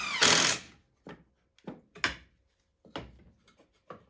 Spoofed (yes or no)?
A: no